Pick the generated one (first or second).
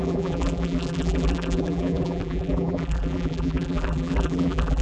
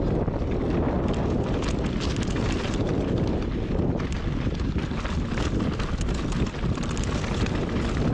first